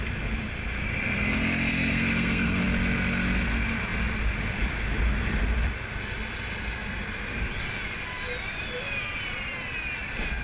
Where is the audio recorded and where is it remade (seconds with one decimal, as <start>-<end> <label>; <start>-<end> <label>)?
0.0-1.7 recorded; 1.7-2.6 remade; 2.6-10.4 recorded